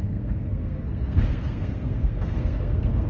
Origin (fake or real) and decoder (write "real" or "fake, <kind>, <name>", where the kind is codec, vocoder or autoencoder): fake, codec, SNAC